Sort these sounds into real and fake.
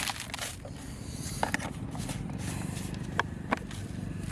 real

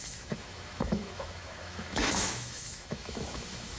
fake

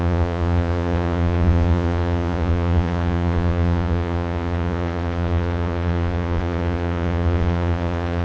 fake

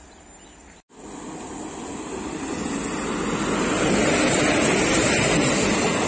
real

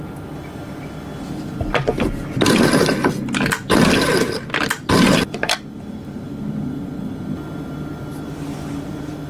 real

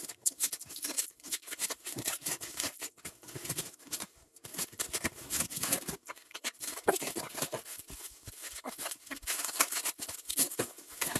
fake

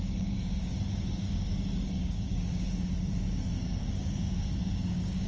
fake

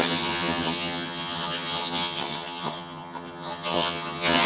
fake